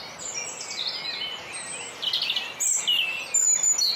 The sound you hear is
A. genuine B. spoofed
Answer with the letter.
A